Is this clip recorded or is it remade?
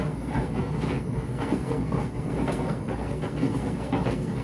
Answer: remade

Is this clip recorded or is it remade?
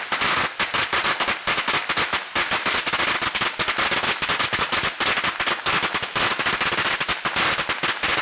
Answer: recorded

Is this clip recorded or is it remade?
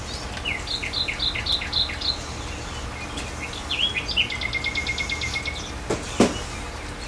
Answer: recorded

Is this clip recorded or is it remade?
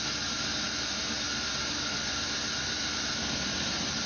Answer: recorded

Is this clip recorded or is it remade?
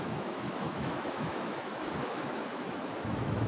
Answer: remade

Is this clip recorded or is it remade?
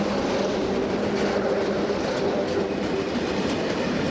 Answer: recorded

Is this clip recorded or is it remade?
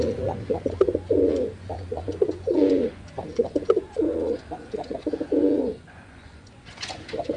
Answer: remade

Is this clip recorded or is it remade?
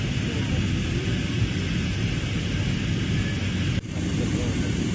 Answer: recorded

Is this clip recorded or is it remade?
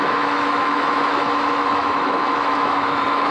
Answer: remade